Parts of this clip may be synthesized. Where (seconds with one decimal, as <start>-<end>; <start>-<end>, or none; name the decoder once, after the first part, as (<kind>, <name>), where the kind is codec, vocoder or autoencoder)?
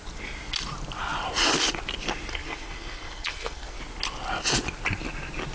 2.3-3.8 (codec, SNAC)